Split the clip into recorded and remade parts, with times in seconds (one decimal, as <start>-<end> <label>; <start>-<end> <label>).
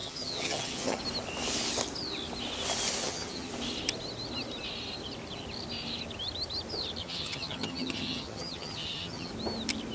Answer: 0.0-1.0 remade; 1.0-3.0 recorded; 3.0-3.5 remade; 3.5-7.0 recorded; 7.0-9.3 remade; 9.3-9.9 recorded